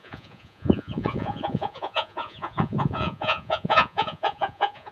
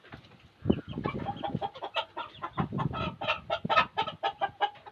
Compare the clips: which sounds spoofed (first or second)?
first